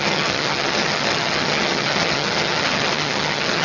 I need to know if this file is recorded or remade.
remade